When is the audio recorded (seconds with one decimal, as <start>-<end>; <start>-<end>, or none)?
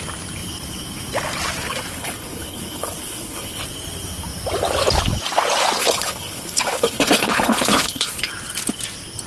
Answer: 0.0-1.9; 3.6-5.8; 8.3-9.3